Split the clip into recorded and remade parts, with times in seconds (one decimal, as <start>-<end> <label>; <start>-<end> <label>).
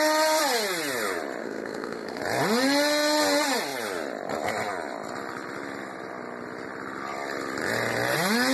0.0-1.4 recorded; 1.4-2.2 remade; 2.2-8.5 recorded